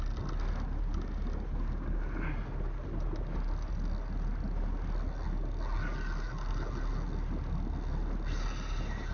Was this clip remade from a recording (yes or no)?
no